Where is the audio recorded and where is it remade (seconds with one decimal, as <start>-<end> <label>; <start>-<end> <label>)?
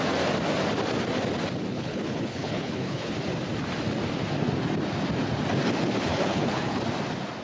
0.0-1.7 recorded; 1.7-3.1 remade; 3.1-6.1 recorded; 6.1-6.8 remade; 6.8-7.4 recorded